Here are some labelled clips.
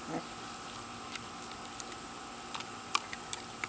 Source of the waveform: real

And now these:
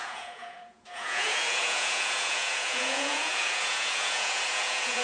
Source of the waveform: fake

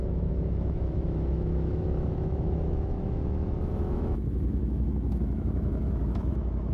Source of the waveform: fake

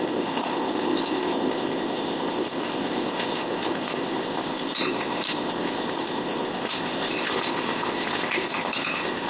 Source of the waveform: fake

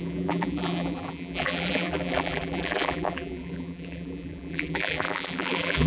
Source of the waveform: fake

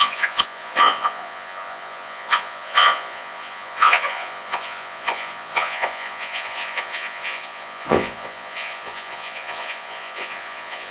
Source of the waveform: fake